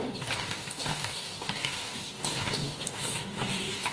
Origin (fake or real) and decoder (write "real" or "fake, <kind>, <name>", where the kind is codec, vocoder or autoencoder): fake, codec, DAC